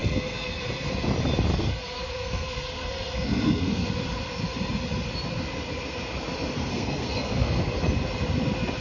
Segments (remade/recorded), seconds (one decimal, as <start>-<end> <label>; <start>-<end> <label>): 0.0-0.6 remade; 0.6-1.5 recorded; 1.5-3.9 remade; 3.9-6.7 recorded; 6.7-7.6 remade; 7.6-8.8 recorded